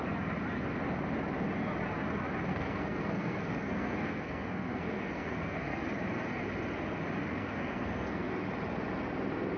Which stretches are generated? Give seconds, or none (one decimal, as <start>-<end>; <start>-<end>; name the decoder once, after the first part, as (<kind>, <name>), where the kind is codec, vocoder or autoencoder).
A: 2.5-5.8 (codec, SNAC); 7.3-8.3